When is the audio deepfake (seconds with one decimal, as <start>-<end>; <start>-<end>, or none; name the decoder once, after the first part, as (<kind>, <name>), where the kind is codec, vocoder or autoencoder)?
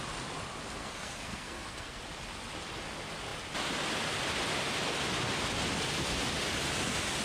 0.8-2.0 (codec, SNAC)